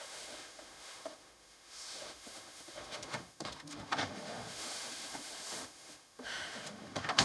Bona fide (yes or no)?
no